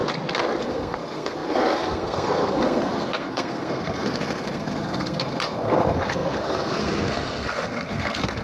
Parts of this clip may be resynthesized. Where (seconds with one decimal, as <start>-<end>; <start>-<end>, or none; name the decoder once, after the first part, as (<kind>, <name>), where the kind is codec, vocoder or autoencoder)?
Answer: 0.6-8.4 (codec, SNAC)